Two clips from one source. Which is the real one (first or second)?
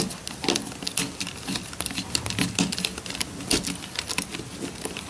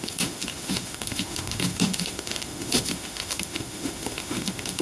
first